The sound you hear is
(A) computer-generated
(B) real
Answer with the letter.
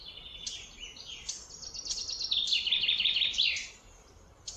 B